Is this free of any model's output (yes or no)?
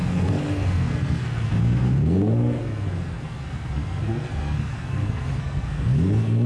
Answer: no